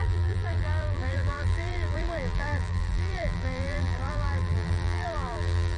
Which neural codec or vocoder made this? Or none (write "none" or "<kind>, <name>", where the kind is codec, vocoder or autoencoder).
vocoder, BigVGAN v2